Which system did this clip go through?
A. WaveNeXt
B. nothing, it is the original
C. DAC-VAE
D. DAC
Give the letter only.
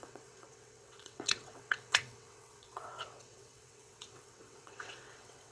A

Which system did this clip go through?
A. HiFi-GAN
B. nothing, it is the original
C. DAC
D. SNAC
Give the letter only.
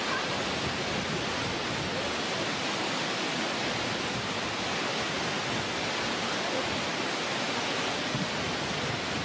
B